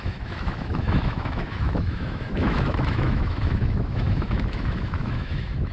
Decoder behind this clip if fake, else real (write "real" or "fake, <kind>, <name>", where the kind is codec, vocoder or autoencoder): fake, autoencoder, DAC-VAE